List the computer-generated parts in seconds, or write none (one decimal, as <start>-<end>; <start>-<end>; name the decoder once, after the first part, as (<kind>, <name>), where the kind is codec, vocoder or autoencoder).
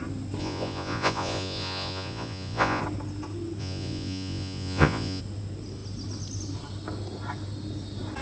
0.4-2.8 (vocoder, Vocos); 3.6-5.2